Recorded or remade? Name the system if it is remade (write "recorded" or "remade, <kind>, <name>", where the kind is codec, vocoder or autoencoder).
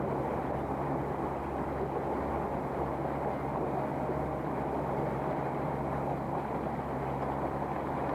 recorded